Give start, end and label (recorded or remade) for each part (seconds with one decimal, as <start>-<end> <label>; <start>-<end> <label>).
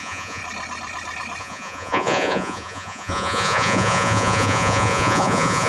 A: 0.0-0.4 remade; 0.4-1.4 recorded; 1.4-5.7 remade